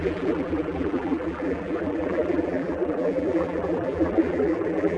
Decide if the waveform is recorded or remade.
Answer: remade